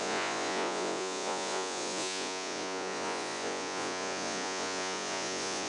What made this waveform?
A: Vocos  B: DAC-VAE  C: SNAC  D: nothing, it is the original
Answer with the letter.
A